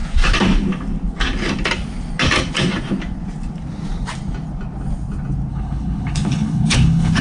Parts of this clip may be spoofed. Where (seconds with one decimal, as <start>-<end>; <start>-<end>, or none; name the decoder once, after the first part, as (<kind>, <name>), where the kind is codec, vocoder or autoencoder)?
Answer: 5.5-7.2 (codec, HILCodec)